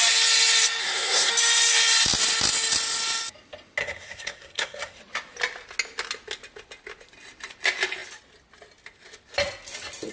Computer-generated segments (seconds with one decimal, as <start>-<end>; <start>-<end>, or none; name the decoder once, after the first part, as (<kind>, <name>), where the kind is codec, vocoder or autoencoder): 0.8-1.3 (codec, SNAC); 3.8-5.0